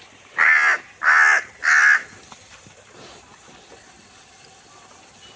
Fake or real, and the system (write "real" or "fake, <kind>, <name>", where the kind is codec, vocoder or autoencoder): real